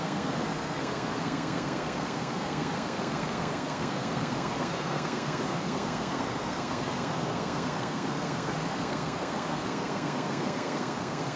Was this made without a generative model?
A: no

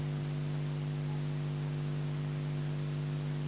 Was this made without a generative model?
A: yes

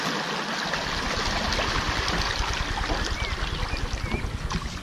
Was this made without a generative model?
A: yes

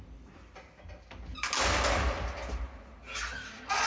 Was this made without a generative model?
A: yes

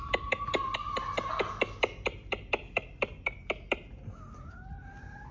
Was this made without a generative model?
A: yes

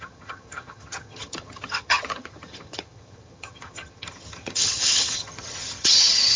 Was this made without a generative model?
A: no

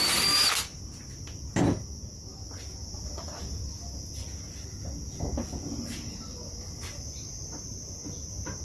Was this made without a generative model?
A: yes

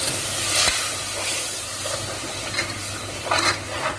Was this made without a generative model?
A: yes